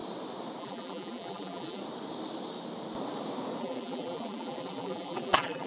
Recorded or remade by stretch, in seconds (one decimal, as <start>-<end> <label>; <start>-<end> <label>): 0.0-0.6 recorded; 0.6-1.8 remade; 1.8-3.6 recorded; 3.6-5.7 remade